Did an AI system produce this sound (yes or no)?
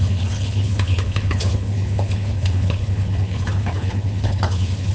yes